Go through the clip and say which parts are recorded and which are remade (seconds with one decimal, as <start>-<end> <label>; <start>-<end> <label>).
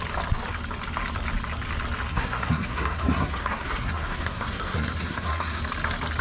0.0-2.1 recorded; 2.1-5.6 remade; 5.6-6.2 recorded